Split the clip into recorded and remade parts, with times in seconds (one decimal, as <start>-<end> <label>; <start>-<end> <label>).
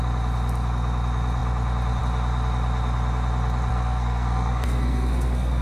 0.0-3.7 recorded; 3.7-5.6 remade